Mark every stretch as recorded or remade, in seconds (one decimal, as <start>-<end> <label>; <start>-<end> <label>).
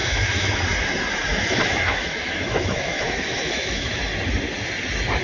0.0-0.6 remade; 0.6-1.3 recorded; 1.3-4.0 remade; 4.0-5.2 recorded